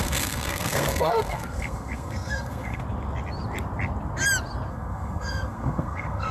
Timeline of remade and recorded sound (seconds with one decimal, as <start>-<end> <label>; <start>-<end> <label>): 0.0-2.8 remade; 2.8-4.7 recorded; 4.7-6.3 remade